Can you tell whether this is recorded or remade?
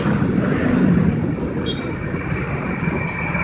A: recorded